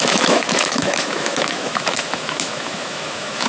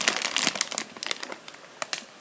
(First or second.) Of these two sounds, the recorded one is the second